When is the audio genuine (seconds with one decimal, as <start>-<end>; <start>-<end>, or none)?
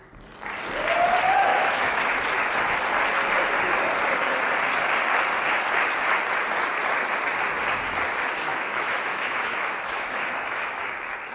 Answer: 0.0-1.5; 2.0-8.5; 10.8-11.3